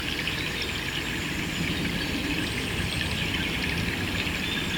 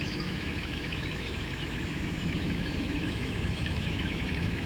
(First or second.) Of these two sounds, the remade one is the second